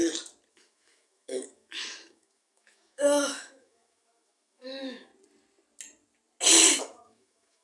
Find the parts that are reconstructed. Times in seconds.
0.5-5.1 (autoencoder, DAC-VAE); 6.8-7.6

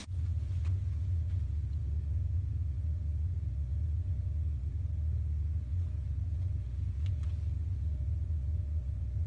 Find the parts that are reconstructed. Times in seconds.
0.0-9.3 (vocoder, Vocos)